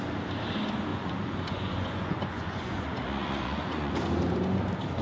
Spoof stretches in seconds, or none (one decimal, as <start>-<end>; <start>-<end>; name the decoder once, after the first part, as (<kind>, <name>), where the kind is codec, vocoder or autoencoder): 0.9-3.9 (vocoder, Vocos)